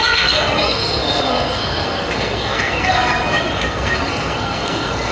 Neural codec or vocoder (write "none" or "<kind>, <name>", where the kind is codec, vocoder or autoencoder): codec, SNAC